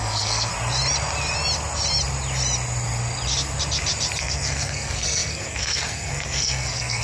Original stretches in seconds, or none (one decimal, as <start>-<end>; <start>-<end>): 0.5-4.2